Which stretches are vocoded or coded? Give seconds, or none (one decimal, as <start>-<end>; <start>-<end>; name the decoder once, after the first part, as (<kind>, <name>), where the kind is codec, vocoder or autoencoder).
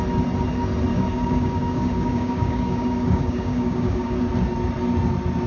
0.9-4.2 (codec, DAC)